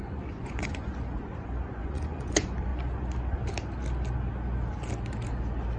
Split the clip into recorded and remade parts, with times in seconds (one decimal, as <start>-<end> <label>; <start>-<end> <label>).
0.0-2.7 remade; 2.7-5.8 recorded